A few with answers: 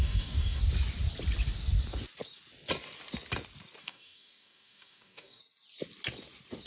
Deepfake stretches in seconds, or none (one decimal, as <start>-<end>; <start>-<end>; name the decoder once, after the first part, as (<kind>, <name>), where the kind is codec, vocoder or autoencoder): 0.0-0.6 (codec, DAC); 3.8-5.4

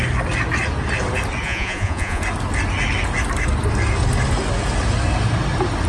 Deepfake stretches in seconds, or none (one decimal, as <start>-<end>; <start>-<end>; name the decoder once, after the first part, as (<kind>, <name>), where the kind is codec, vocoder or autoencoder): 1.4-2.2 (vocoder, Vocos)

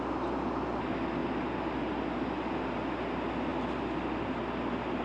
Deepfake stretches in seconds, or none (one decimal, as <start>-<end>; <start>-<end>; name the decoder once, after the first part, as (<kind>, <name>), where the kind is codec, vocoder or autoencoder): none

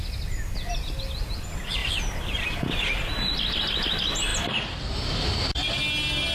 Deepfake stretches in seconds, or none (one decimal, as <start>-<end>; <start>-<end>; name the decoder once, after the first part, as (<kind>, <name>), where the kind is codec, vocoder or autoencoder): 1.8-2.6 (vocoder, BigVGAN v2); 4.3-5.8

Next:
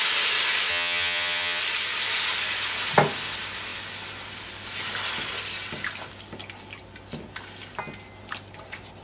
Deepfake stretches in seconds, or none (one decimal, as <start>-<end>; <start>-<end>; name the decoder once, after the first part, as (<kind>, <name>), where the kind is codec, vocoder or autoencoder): 0.7-1.6 (vocoder, HiFi-GAN)